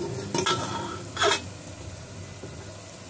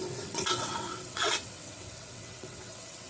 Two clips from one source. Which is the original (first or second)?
first